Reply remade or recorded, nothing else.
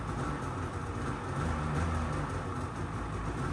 recorded